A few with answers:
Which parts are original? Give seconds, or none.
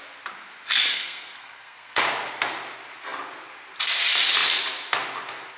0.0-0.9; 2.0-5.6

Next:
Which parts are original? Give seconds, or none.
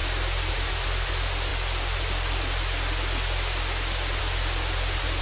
0.0-5.2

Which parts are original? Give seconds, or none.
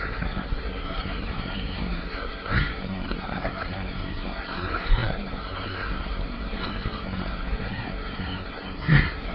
none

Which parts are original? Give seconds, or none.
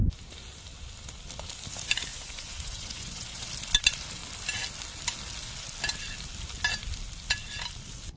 0.0-2.1; 3.5-8.2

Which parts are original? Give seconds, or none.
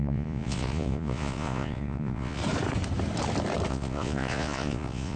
2.4-3.7